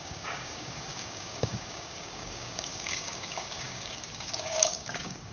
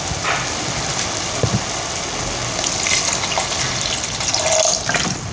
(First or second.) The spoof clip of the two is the first